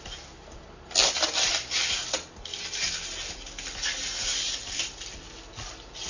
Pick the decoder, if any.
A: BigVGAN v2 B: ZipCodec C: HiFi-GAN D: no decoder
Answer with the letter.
D